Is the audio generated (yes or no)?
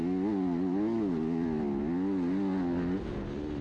no